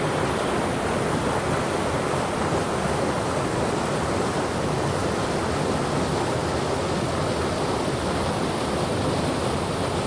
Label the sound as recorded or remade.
recorded